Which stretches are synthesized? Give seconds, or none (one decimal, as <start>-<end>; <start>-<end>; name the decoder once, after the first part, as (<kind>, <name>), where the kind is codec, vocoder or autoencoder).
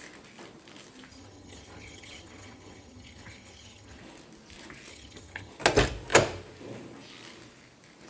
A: 1.1-4.0 (vocoder, HiFi-GAN); 4.9-5.5